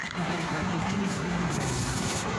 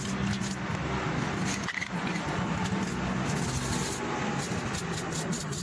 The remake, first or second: first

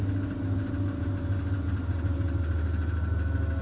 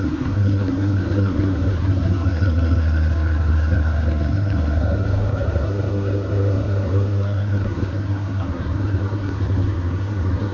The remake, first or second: second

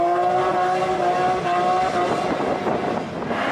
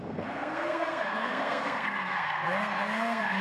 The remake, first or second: second